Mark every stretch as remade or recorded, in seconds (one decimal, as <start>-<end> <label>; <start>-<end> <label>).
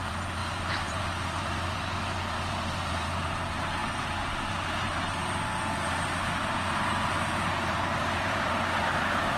0.0-3.8 remade; 3.8-4.5 recorded; 4.5-9.4 remade